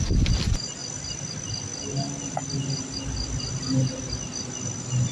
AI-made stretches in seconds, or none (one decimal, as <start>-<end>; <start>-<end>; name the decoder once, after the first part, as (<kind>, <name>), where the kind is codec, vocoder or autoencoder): none